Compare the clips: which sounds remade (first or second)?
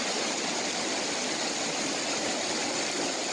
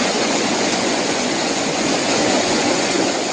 second